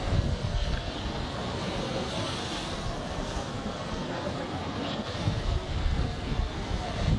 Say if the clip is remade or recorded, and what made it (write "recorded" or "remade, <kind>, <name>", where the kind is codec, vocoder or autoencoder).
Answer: remade, codec, SNAC